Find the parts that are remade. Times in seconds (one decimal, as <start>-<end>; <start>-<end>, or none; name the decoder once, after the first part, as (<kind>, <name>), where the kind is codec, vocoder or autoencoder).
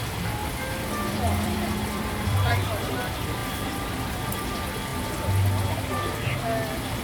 0.4-2.8 (vocoder, BigVGAN v2); 3.4-4.3